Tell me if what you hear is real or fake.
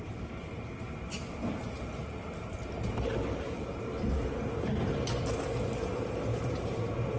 real